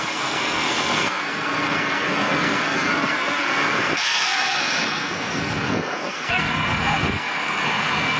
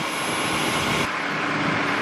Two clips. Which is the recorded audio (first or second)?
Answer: second